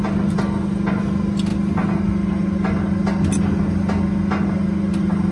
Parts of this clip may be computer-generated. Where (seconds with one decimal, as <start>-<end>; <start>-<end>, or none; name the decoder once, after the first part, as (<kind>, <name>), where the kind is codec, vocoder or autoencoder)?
none